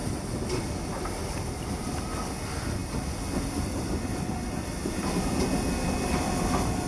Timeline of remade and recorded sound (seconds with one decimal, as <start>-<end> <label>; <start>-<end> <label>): 0.0-6.9 recorded